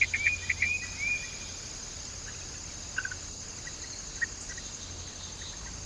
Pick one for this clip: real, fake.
real